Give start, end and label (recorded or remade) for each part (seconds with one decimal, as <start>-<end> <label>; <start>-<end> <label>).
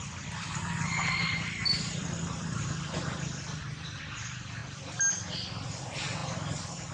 0.0-4.6 remade; 4.6-5.1 recorded; 5.1-6.9 remade